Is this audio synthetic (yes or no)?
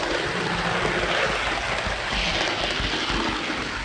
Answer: no